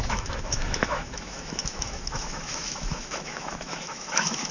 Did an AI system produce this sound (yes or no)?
yes